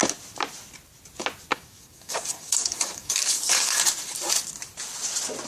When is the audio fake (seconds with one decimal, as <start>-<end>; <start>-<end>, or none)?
1.5-3.9